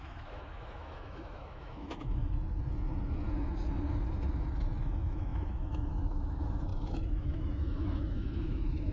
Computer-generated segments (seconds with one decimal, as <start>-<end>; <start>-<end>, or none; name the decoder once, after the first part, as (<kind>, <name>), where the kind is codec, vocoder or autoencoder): 0.0-2.2 (autoencoder, DAC-VAE); 4.8-8.9